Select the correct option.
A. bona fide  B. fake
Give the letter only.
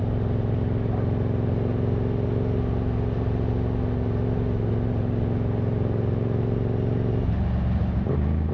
A